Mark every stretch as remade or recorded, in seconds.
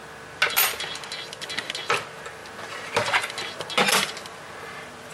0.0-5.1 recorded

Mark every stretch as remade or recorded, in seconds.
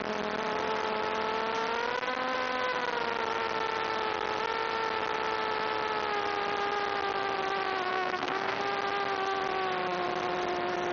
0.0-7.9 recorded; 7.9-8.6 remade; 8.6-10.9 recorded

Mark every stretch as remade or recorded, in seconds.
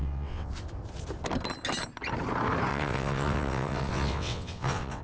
0.0-0.5 remade; 0.5-2.7 recorded; 2.7-5.0 remade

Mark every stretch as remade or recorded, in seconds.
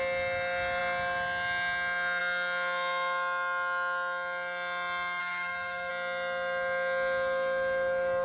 0.0-5.2 recorded; 5.2-5.9 remade; 5.9-8.2 recorded